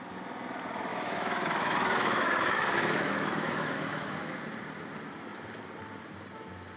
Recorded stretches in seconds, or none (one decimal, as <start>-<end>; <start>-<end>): 0.0-0.9; 4.4-6.8